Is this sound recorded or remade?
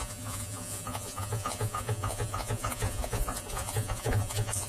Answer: remade